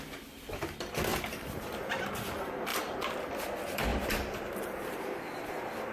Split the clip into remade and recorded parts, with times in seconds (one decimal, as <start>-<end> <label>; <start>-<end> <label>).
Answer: 0.0-1.1 recorded; 1.1-2.1 remade; 2.1-3.9 recorded; 3.9-5.5 remade; 5.5-5.9 recorded